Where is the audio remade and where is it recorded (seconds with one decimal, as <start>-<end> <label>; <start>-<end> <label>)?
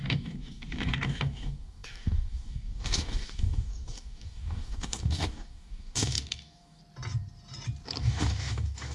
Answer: 0.0-6.8 remade; 6.8-8.0 recorded; 8.0-8.9 remade